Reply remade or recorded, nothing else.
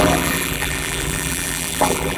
remade